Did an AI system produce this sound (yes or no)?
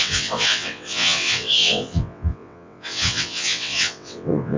yes